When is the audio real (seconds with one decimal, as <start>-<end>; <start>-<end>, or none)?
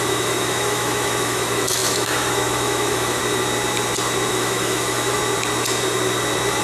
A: 3.2-4.3; 5.2-6.6